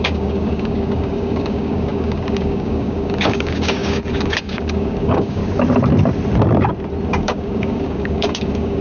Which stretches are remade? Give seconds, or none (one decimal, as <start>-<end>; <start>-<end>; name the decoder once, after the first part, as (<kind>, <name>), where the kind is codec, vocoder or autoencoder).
0.0-5.4 (codec, DAC); 7.1-8.8